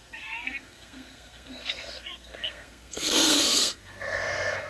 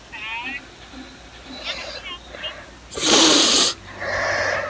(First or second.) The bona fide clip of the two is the second